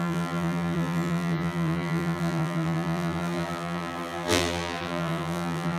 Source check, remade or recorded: remade